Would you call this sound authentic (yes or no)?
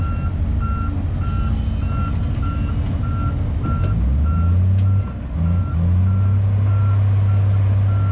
yes